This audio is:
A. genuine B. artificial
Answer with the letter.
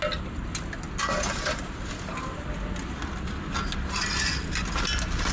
A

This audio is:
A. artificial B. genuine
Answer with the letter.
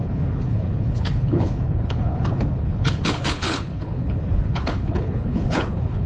A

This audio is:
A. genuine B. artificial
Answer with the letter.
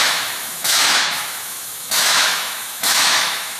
B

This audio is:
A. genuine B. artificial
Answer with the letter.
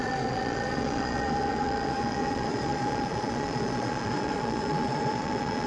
B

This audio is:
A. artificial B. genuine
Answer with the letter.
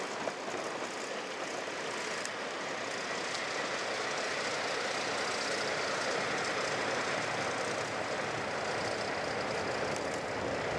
B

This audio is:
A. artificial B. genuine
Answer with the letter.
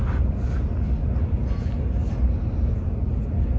B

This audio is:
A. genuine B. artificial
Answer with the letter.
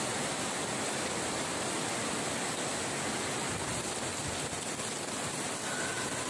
A